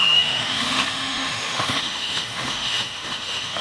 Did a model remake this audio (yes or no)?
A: yes